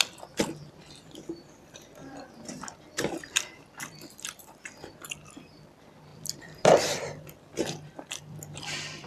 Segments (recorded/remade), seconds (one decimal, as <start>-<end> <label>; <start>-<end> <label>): 0.0-9.1 remade